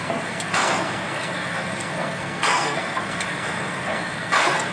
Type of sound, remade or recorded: remade